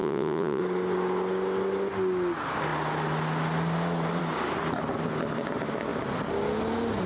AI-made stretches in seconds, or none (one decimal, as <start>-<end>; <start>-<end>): 0.0-0.6